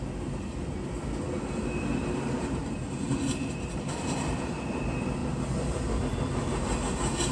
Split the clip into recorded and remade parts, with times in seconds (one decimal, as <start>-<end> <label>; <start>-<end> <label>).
0.0-1.9 recorded; 1.9-3.7 remade; 3.7-7.3 recorded